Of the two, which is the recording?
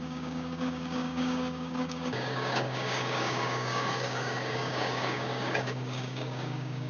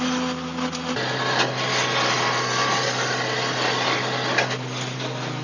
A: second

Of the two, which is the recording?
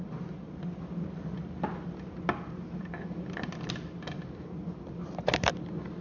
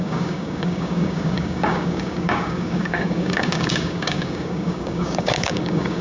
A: first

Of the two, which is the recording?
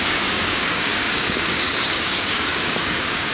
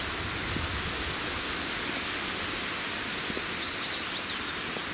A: second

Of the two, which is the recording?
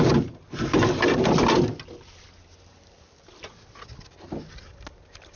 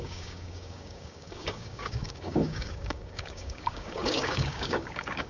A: first